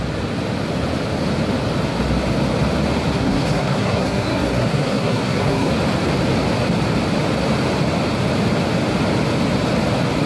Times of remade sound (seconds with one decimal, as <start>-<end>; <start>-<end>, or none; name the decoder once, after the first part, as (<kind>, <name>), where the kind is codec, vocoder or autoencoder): 3.1-5.7 (codec, SNAC)